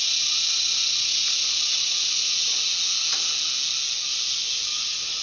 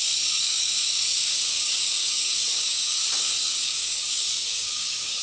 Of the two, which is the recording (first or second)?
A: first